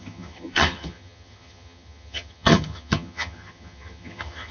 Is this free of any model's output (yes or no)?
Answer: no